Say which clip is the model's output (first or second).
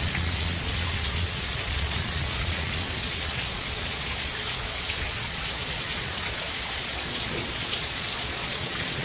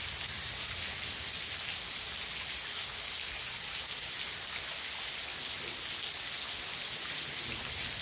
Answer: first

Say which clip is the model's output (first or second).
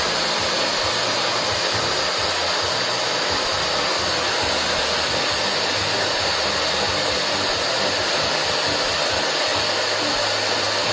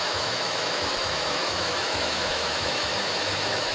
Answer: second